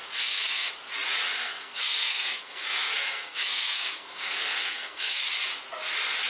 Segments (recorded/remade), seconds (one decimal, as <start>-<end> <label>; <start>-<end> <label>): 0.0-0.7 remade; 0.7-1.4 recorded; 1.4-5.2 remade; 5.2-6.3 recorded